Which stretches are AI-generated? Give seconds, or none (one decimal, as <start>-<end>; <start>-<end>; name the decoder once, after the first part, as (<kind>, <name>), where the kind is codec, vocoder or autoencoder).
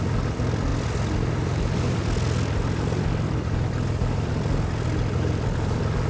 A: none